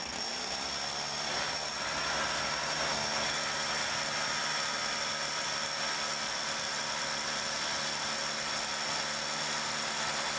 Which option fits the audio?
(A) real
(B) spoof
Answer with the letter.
A